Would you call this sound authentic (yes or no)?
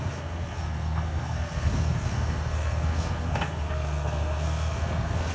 no